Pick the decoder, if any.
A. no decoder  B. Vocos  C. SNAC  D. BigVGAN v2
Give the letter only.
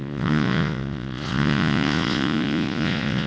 B